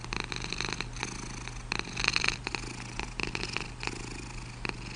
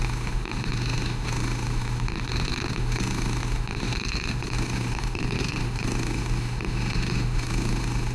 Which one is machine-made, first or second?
second